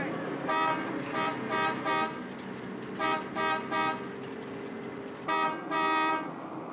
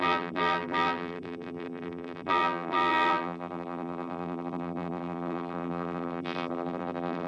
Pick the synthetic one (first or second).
second